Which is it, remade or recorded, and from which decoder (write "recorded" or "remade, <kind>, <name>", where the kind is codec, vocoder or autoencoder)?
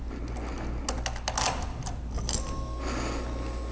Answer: recorded